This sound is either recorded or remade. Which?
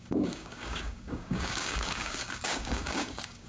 remade